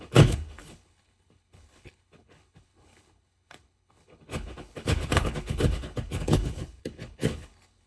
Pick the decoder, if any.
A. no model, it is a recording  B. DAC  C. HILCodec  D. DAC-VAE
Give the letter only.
C